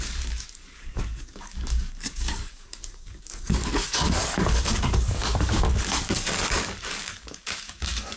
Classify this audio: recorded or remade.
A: remade